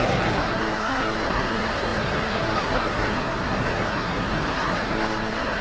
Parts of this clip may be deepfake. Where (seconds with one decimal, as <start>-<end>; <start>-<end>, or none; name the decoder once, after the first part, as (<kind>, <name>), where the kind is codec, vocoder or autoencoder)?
0.0-5.6 (codec, SNAC)